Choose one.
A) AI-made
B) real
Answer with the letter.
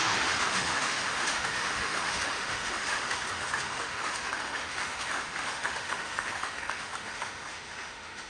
A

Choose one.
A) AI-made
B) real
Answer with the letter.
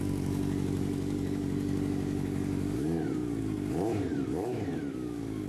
A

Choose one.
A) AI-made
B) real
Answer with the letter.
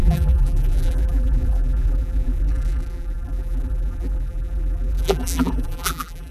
A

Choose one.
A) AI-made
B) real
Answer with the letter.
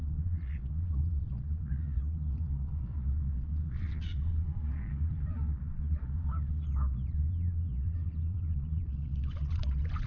A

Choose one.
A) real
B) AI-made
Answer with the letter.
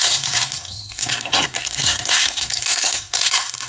B